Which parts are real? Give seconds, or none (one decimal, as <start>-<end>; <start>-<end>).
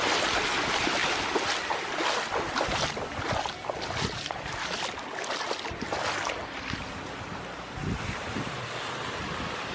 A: 0.0-9.7